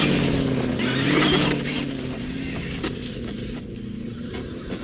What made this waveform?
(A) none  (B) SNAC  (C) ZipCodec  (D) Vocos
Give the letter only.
A